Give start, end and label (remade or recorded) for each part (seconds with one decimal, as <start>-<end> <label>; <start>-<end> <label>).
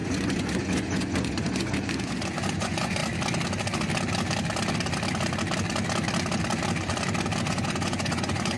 0.0-3.0 remade; 3.0-7.4 recorded; 7.4-8.6 remade